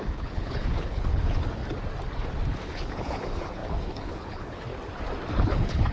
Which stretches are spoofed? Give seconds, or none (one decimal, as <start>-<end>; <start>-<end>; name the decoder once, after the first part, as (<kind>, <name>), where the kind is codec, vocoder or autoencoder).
0.0-1.6 (codec, HILCodec); 2.5-4.7; 5.3-5.9